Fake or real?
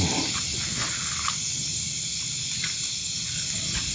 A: real